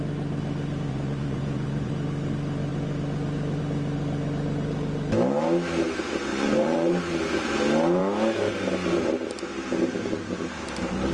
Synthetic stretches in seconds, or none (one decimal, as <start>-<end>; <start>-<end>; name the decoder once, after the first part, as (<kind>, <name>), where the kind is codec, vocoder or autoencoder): 0.9-1.9 (vocoder, Vocos); 6.3-6.9